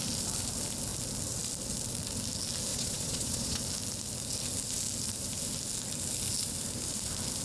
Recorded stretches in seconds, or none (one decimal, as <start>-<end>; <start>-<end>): 0.0-2.7; 3.6-7.4